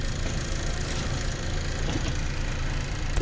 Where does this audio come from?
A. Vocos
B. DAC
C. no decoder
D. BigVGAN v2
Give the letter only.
D